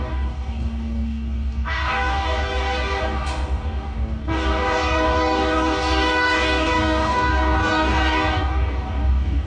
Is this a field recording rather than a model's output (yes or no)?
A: no